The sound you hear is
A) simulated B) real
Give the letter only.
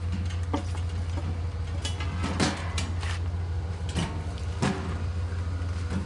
B